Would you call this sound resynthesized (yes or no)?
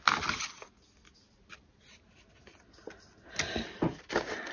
no